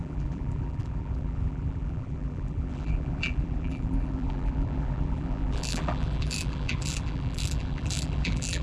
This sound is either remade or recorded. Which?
remade